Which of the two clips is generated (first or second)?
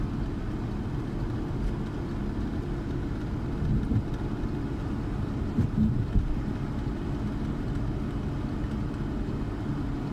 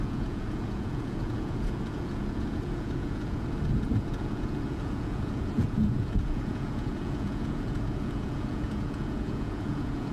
second